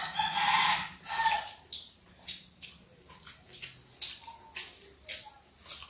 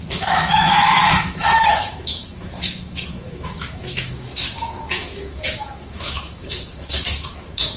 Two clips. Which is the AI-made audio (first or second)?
second